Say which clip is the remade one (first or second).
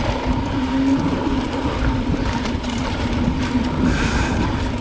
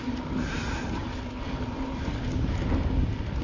first